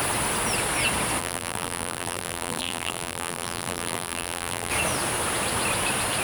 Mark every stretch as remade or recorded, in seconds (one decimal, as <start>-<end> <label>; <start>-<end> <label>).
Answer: 0.0-1.2 recorded; 1.2-4.7 remade; 4.7-6.2 recorded